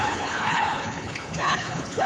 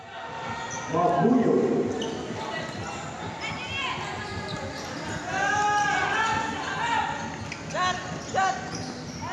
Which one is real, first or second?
second